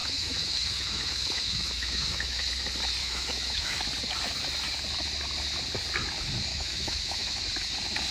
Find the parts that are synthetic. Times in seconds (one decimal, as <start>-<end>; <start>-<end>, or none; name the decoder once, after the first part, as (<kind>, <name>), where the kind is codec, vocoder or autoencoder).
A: 0.0-2.4 (autoencoder, DAC-VAE); 3.0-3.8; 6.5-7.4